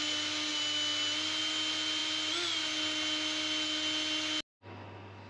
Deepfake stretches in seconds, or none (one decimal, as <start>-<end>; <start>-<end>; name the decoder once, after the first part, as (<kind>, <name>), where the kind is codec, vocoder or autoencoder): none

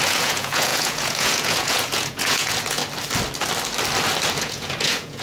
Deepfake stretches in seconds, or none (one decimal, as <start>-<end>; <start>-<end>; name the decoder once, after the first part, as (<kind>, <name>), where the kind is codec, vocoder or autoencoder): 0.0-2.8 (vocoder, Vocos); 4.4-5.2

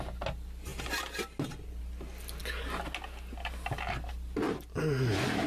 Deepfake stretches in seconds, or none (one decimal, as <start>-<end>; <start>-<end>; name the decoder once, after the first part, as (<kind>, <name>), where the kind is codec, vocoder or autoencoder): none

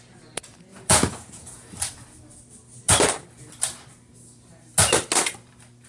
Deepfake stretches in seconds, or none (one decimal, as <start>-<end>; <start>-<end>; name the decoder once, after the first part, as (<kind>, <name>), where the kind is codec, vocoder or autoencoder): 0.7-1.7 (vocoder, Vocos)